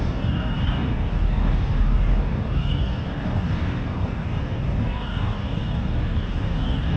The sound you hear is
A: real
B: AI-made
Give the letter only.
B